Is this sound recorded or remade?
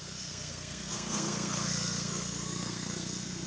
remade